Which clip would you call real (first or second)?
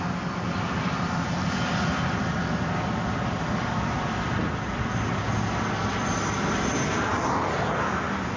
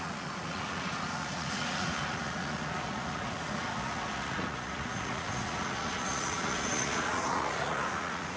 first